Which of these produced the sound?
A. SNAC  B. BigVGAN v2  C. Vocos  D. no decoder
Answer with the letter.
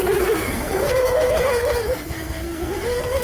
A